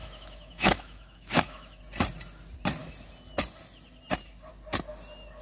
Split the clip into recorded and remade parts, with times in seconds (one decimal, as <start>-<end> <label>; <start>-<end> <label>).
0.0-1.8 remade; 1.8-5.4 recorded